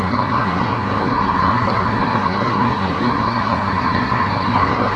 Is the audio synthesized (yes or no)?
yes